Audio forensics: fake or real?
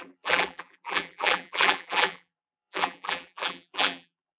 fake